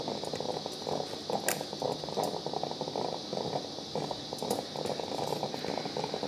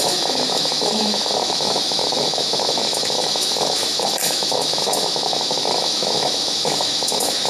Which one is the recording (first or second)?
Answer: first